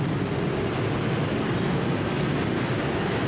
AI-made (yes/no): no